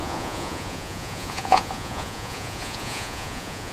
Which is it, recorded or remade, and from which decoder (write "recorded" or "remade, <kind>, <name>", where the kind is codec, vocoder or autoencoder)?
remade, vocoder, Vocos